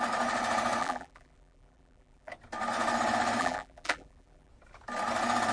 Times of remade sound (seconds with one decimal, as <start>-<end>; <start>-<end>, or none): 0.8-2.3; 3.4-4.5